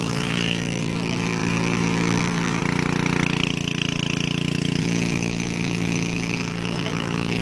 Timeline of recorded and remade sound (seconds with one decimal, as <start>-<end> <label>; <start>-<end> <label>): 0.0-2.6 remade; 2.6-4.8 recorded; 4.8-7.4 remade